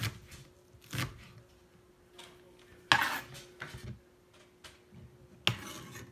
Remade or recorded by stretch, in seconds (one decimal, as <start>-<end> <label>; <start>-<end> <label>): 0.0-6.1 recorded